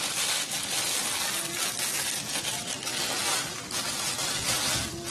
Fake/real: real